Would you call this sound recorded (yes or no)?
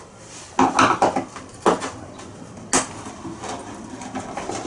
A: yes